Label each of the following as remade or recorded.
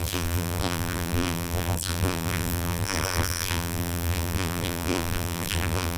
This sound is remade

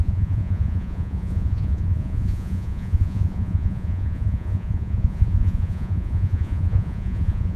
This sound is remade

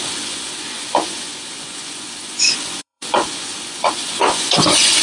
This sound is remade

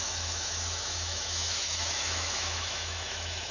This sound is remade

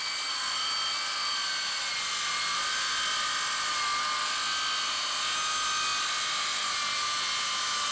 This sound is recorded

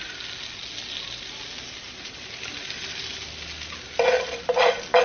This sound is recorded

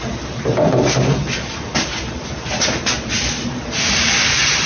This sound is recorded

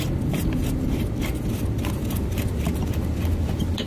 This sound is recorded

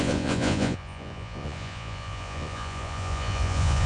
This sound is remade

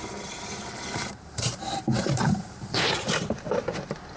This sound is remade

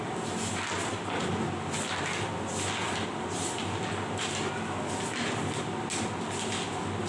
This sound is recorded